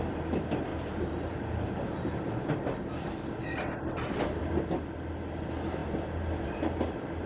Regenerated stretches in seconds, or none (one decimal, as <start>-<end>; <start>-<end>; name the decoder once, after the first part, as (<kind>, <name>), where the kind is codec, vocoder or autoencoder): 0.7-4.6 (vocoder, BigVGAN v2); 5.8-6.4